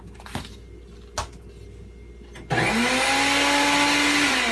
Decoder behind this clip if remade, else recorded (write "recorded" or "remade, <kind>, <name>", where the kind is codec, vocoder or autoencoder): recorded